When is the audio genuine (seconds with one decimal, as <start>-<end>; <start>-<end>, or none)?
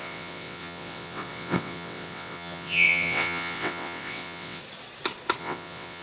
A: 4.6-5.4